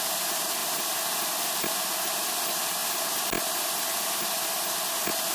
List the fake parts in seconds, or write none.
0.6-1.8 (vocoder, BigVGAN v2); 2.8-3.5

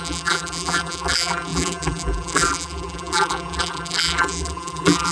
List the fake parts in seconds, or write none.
0.0-5.1 (vocoder, BigVGAN v2)

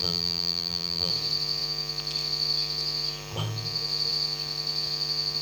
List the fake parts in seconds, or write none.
0.0-1.1 (vocoder, BigVGAN v2)

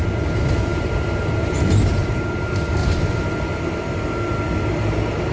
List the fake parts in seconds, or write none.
none

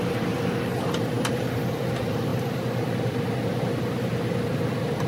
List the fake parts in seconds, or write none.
none

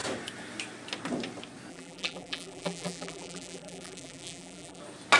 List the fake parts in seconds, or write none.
1.7-4.8 (vocoder, BigVGAN v2)

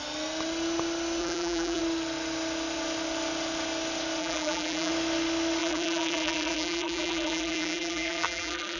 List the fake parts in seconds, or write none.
1.2-1.8 (vocoder, BigVGAN v2); 4.2-4.9; 5.6-8.8